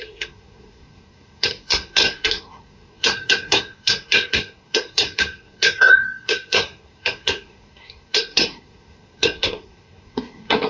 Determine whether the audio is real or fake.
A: fake